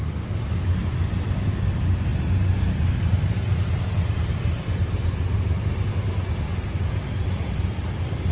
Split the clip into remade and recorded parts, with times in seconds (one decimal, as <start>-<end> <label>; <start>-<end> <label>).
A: 0.0-8.3 remade